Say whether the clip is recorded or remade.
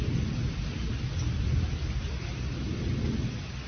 recorded